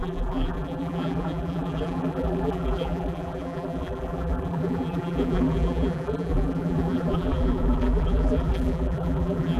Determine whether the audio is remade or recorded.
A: remade